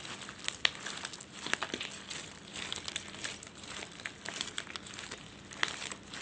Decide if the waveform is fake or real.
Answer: real